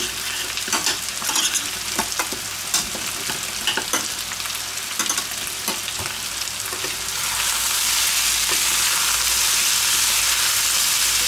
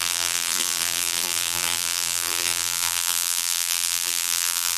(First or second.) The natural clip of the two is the first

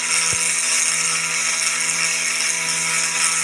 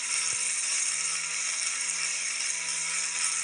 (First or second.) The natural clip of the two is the first